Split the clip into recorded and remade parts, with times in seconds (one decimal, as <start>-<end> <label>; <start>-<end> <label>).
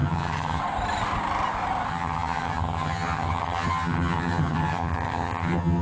0.0-0.6 remade; 0.6-1.9 recorded; 1.9-5.8 remade